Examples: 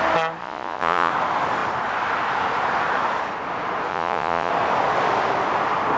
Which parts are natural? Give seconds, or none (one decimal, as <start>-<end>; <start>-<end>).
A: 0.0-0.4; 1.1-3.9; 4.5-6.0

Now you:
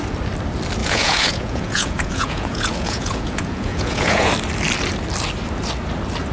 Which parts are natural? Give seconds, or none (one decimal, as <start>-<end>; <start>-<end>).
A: 0.0-0.8; 4.3-6.3

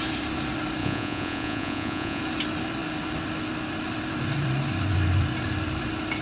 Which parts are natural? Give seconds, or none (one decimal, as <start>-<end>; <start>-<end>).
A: 0.0-0.8; 2.2-6.2

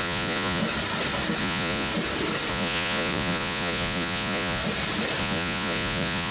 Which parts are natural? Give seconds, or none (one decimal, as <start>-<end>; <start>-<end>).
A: 0.6-1.4; 1.9-2.5; 4.6-5.2

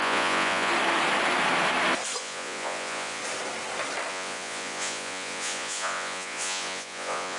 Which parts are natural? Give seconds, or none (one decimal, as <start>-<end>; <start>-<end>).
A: 0.7-2.2; 3.2-4.1

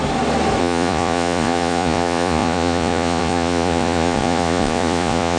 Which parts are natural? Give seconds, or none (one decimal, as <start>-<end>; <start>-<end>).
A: 0.0-0.6

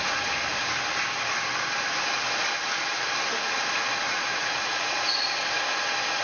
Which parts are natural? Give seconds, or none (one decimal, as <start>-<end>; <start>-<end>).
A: 0.0-4.1; 5.3-6.2

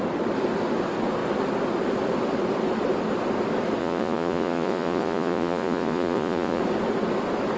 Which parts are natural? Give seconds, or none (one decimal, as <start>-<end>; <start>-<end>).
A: 0.0-3.8; 6.6-7.6